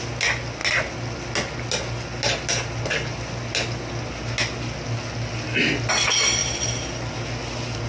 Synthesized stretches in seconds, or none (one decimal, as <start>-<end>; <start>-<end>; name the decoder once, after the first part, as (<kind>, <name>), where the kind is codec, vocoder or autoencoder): none